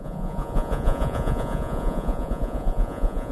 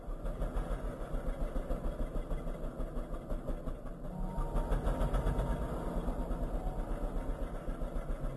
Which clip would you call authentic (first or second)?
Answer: second